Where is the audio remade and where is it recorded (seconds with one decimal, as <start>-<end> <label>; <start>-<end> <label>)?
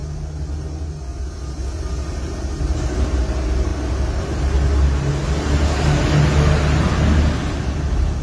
0.0-8.2 recorded